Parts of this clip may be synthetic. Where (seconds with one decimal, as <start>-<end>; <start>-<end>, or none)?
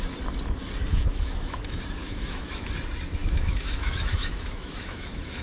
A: 0.9-1.6; 2.0-2.7; 3.2-5.4